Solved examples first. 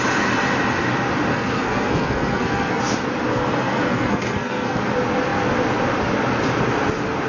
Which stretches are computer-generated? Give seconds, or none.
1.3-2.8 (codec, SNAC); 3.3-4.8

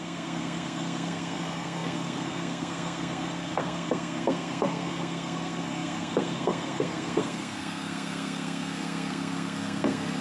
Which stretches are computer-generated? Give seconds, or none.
0.0-10.2 (codec, SNAC)

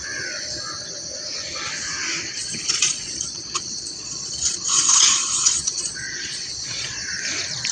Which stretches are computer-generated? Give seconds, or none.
2.4-7.0 (vocoder, Vocos)

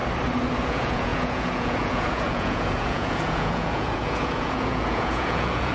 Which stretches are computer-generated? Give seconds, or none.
0.6-5.7 (vocoder, Vocos)

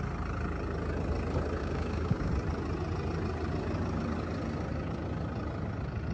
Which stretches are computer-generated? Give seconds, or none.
1.6-2.3 (codec, DAC)